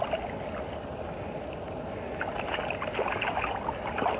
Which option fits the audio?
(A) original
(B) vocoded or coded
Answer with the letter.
A